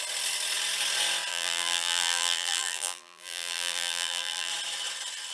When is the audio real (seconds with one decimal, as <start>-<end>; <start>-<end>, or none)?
0.0-1.3; 4.5-5.3